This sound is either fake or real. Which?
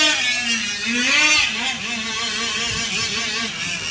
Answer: real